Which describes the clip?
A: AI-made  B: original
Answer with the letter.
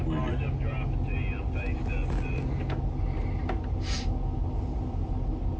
B